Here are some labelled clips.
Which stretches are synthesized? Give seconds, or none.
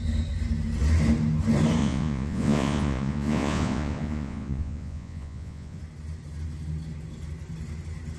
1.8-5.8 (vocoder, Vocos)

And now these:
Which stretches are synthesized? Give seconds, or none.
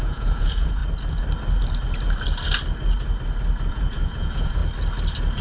0.0-0.8 (vocoder, Vocos); 3.7-4.6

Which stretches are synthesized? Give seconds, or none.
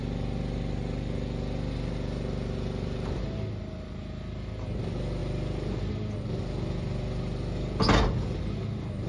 none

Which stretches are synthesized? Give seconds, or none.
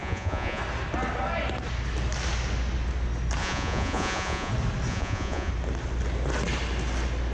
0.0-0.6 (vocoder, Vocos); 3.4-4.5; 4.9-5.5